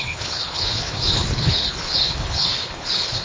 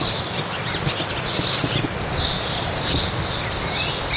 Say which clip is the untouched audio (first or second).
second